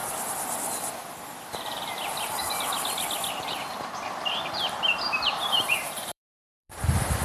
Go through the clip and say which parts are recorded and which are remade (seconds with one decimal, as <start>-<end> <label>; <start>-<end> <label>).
0.0-4.3 recorded; 4.3-7.2 remade